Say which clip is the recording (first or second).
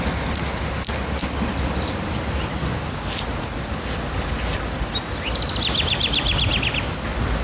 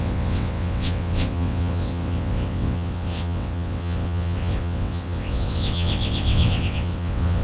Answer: first